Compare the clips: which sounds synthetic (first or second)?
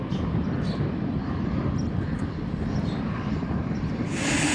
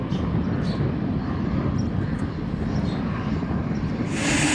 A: first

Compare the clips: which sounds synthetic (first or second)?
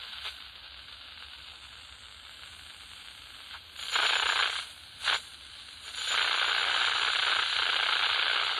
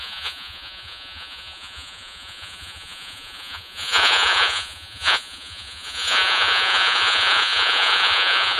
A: second